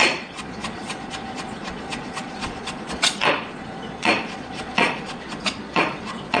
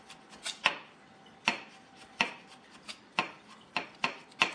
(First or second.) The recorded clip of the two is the second